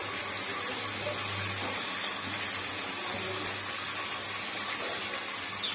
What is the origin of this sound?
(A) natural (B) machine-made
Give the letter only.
A